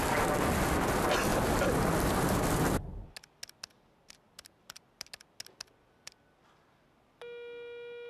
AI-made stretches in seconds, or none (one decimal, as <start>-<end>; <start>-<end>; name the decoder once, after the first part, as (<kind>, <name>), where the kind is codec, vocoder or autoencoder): none